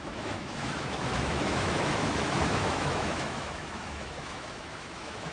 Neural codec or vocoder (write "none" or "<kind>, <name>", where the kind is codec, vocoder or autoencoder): autoencoder, DAC-VAE